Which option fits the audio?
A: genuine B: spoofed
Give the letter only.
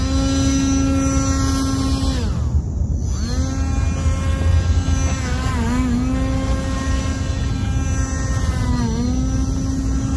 A